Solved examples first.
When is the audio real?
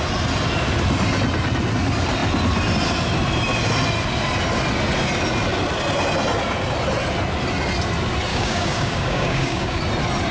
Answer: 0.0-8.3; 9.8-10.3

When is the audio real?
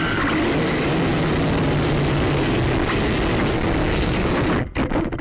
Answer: 0.0-3.8; 4.3-5.2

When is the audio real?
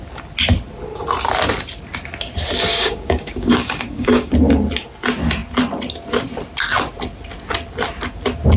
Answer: 0.0-2.7; 4.3-8.6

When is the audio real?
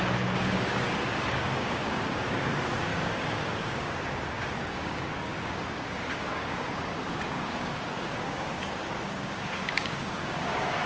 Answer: none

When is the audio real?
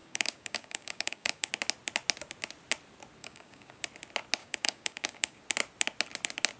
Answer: 1.5-3.2; 3.8-4.4; 5.4-6.6